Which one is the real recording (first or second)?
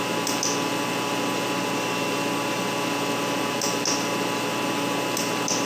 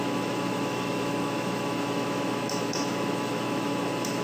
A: first